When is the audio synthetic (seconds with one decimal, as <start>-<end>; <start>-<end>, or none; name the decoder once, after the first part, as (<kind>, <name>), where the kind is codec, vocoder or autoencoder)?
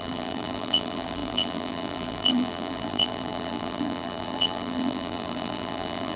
0.0-6.2 (vocoder, BigVGAN v2)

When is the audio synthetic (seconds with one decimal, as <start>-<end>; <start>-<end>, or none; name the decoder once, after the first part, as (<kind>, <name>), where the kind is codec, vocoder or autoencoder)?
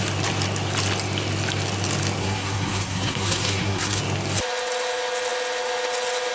2.2-4.0 (codec, SNAC)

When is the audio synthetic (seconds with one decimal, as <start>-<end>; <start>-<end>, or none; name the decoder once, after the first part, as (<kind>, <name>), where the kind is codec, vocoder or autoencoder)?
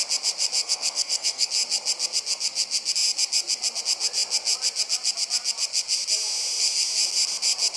0.6-1.5 (codec, SNAC)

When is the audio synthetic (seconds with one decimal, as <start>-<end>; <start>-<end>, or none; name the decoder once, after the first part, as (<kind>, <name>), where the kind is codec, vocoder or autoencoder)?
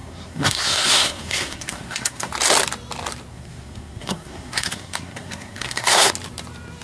0.0-2.3 (codec, SNAC); 3.3-6.1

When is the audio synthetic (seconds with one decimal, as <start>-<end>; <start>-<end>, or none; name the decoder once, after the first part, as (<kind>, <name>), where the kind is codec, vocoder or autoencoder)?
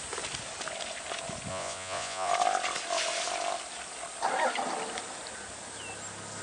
1.5-2.3 (vocoder, Vocos)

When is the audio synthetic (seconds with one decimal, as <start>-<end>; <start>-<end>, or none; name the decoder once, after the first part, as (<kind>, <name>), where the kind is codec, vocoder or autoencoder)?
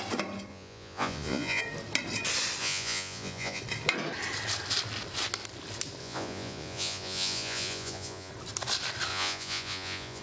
0.5-1.6 (vocoder, Vocos); 2.6-3.6; 6.0-8.3; 9.1-10.2